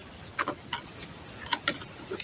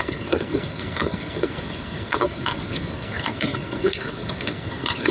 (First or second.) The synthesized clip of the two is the second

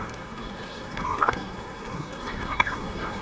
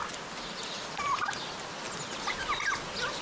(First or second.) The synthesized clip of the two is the first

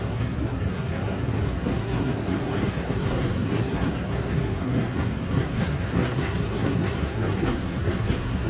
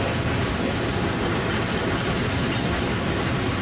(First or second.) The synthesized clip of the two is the first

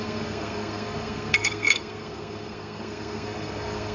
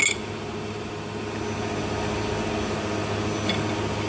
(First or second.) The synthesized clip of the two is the first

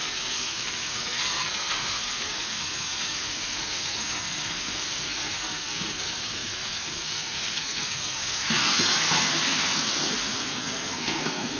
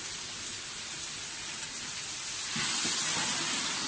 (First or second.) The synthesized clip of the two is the first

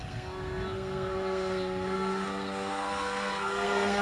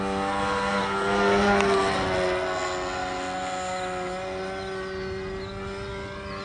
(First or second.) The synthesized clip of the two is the first